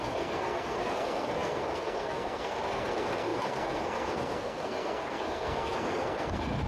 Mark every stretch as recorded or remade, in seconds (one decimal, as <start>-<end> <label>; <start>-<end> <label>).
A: 0.0-6.7 remade

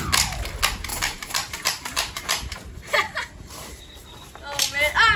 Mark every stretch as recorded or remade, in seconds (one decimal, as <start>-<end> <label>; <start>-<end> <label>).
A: 0.0-0.9 recorded; 0.9-3.8 remade; 3.8-5.2 recorded

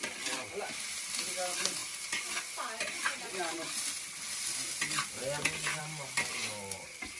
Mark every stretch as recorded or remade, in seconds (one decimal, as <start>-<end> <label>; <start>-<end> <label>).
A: 0.0-7.2 recorded

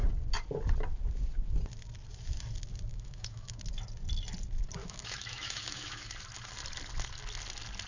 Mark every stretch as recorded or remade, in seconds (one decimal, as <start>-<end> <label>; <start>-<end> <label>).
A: 0.0-2.9 recorded; 2.9-3.6 remade; 3.6-4.8 recorded; 4.8-6.1 remade; 6.1-7.9 recorded

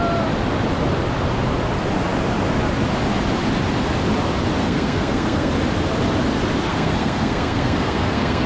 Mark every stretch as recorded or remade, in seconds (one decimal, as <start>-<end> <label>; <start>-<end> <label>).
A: 0.0-4.6 recorded; 4.6-5.5 remade; 5.5-6.7 recorded; 6.7-8.5 remade